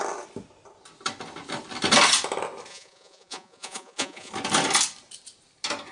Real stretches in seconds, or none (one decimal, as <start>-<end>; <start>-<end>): 0.0-2.7; 4.3-5.9

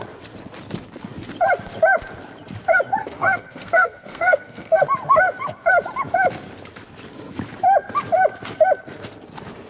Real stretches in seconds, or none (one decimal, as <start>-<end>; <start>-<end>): 0.0-3.0; 4.8-9.7

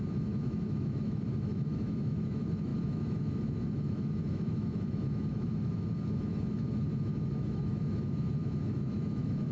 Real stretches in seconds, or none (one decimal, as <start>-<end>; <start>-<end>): none

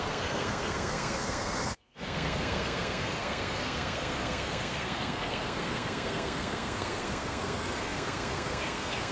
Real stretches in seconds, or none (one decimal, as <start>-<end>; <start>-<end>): none